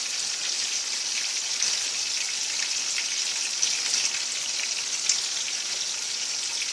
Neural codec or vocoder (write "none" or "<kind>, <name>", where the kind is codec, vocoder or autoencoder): none